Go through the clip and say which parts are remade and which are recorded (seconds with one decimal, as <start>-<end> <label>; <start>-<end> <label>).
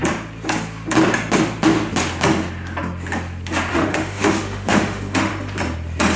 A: 0.0-3.7 recorded; 3.7-5.3 remade; 5.3-6.2 recorded